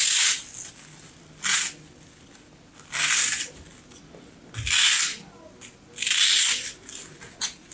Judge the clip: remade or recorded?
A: recorded